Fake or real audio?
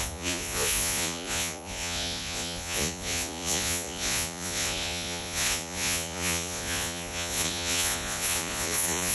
fake